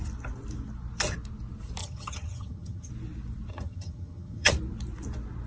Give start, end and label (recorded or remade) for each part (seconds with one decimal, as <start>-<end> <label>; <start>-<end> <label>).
0.0-1.8 recorded; 1.8-2.9 remade; 2.9-3.5 recorded; 3.5-4.5 remade; 4.5-5.5 recorded